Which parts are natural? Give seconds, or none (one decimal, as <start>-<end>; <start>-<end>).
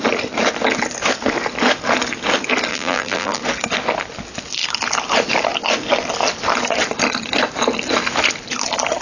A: 0.0-2.7; 3.4-9.0